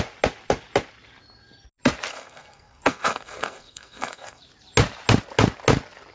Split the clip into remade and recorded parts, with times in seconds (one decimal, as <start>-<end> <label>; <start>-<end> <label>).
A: 0.0-2.1 recorded; 2.1-4.4 remade; 4.4-6.1 recorded